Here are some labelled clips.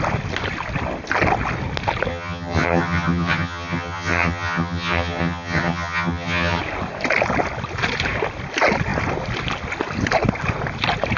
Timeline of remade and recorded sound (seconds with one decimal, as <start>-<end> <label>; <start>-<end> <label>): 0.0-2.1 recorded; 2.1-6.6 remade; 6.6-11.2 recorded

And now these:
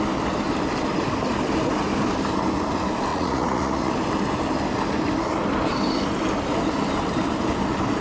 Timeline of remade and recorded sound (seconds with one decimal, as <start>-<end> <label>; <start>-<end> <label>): 0.0-3.1 recorded; 3.1-3.9 remade; 3.9-8.0 recorded

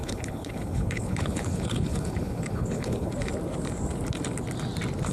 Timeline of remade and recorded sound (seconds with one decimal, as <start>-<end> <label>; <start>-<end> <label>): 0.0-3.1 remade; 3.1-5.1 recorded

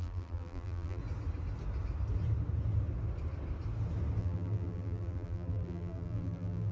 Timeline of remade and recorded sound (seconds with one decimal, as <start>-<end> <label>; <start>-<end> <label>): 0.0-1.0 remade; 1.0-4.2 recorded; 4.2-6.7 remade

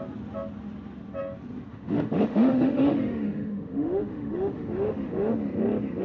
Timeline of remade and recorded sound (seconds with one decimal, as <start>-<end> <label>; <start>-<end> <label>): 0.0-1.7 recorded; 1.7-5.3 remade; 5.3-6.0 recorded

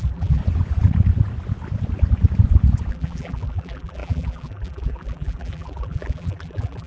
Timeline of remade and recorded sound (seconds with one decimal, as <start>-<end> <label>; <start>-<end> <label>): 0.0-0.4 remade; 0.4-2.9 recorded; 2.9-6.9 remade

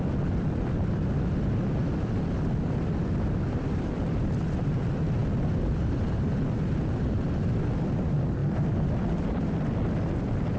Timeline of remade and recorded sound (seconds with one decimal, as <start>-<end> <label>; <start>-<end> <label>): 0.0-10.6 recorded